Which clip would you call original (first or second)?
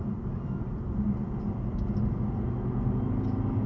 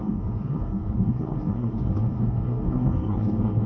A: first